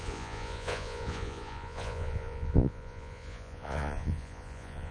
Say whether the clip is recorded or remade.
remade